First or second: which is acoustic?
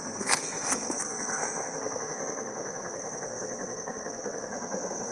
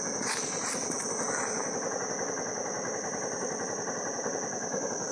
second